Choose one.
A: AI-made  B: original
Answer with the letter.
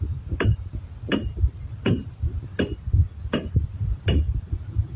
B